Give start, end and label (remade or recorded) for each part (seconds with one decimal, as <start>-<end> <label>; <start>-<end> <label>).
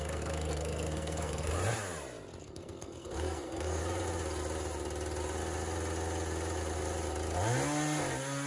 0.0-1.5 remade; 1.5-2.4 recorded; 2.4-3.8 remade; 3.8-8.5 recorded